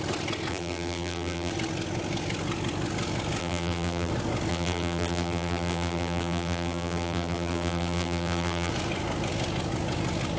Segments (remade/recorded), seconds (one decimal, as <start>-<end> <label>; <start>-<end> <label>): 0.0-0.5 recorded; 0.5-1.5 remade; 1.5-3.4 recorded; 3.4-4.1 remade; 4.1-4.5 recorded; 4.5-8.7 remade; 8.7-10.4 recorded